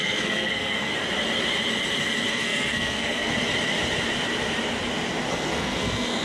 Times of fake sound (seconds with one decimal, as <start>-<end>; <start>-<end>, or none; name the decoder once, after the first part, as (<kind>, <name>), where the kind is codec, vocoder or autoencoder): 0.0-0.9 (codec, SNAC); 2.3-3.3; 5.3-6.2